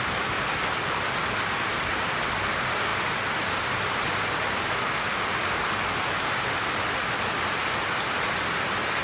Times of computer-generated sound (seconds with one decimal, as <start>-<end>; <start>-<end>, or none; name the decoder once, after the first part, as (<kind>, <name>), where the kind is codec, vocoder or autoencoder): none